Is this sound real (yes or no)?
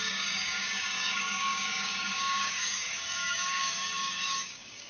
no